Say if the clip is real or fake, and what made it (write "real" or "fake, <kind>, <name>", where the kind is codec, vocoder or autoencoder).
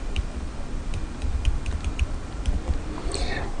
fake, vocoder, BigVGAN v2